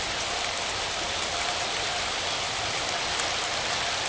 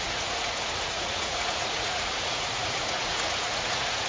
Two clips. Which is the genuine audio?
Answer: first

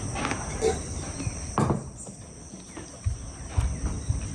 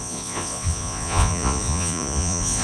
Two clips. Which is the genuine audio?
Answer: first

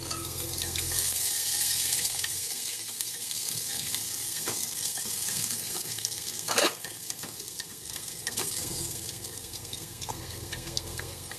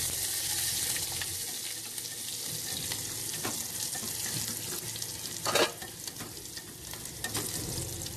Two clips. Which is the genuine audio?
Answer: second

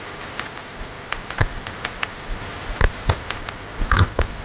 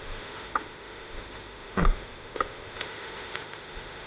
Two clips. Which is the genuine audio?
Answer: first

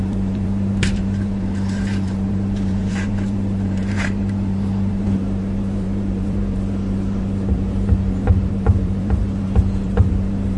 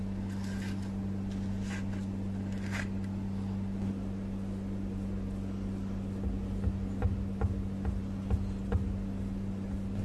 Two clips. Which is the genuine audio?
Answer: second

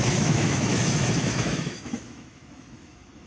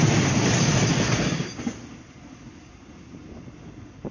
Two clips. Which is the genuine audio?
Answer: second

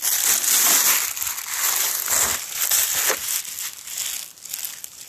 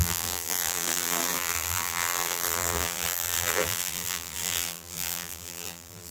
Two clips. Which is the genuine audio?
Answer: first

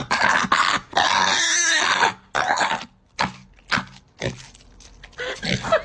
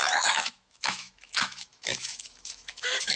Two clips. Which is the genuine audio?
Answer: first